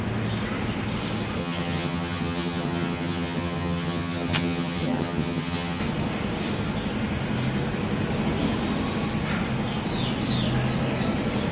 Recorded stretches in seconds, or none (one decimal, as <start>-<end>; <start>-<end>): 0.0-1.4; 5.8-11.5